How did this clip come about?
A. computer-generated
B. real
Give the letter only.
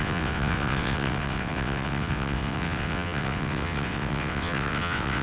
A